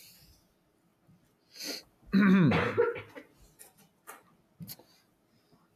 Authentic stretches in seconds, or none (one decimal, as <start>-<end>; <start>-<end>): 0.0-5.8